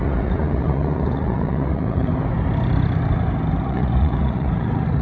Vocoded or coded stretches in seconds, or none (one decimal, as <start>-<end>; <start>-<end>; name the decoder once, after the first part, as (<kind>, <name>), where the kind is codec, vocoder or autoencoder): 0.0-2.1 (vocoder, Vocos); 3.6-5.0